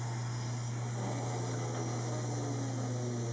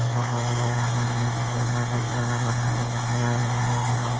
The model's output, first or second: second